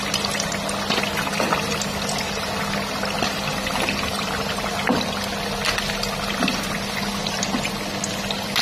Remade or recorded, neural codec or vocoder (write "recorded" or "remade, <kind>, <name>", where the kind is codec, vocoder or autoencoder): recorded